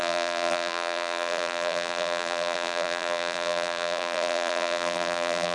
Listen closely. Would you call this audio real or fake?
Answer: fake